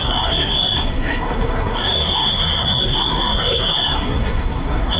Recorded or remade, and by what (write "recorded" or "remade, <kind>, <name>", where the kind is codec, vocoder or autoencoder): remade, codec, SNAC